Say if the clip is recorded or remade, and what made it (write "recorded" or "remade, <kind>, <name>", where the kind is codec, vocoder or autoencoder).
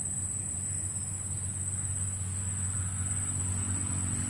recorded